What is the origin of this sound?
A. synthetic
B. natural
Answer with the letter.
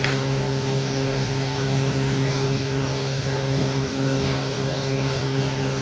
A